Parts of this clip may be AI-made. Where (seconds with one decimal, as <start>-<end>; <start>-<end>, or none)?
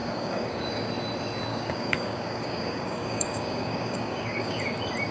0.0-0.9; 1.5-4.6